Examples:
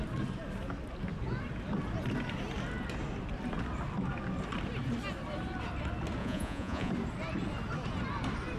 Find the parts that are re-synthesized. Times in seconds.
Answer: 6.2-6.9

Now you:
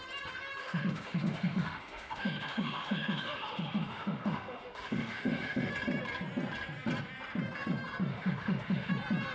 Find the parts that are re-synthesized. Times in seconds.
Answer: 0.6-5.7; 8.1-8.9

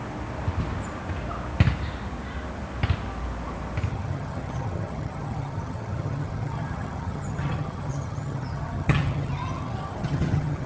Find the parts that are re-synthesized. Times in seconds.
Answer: 3.9-10.7

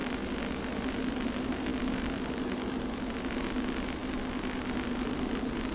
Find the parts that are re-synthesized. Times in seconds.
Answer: none